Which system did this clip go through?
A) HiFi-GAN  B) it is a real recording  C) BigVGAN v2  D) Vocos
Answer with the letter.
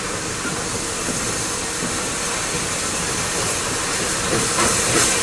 B